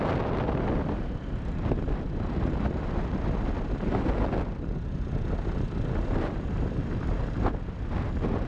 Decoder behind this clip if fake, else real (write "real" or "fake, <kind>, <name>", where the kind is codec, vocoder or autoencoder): real